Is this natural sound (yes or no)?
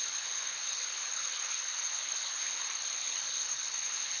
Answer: no